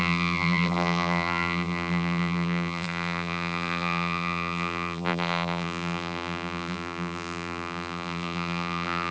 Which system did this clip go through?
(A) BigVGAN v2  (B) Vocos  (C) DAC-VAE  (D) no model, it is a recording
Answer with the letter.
A